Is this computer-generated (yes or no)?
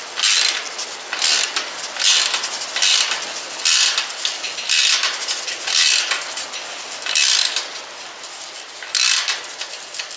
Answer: no